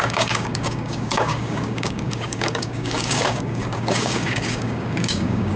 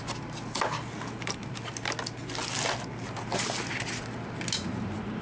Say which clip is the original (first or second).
second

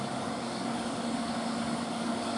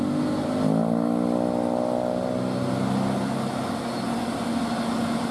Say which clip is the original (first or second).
second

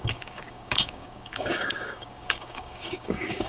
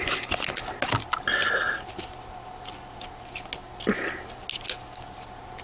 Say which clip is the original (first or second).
second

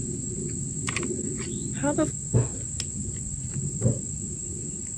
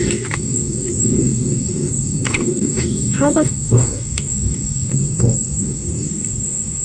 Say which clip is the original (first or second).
first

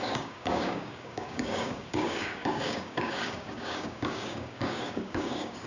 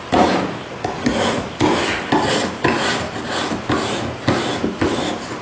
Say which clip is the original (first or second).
second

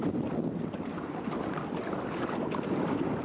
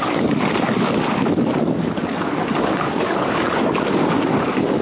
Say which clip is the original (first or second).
first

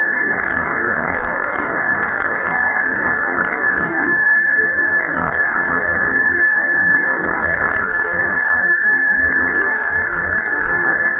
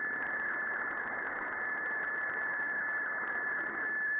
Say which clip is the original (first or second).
second